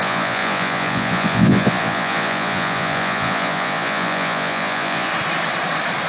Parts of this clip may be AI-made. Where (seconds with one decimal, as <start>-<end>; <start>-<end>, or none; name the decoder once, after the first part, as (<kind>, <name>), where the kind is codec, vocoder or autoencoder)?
0.0-5.1 (vocoder, Vocos)